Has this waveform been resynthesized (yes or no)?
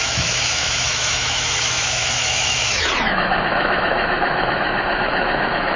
yes